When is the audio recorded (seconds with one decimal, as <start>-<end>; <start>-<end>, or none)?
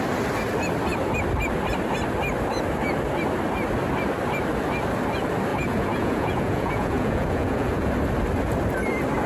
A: 0.0-5.5; 7.9-9.3